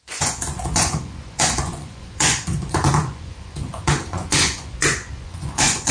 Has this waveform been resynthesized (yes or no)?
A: yes